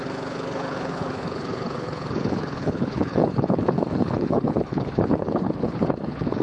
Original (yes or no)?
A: no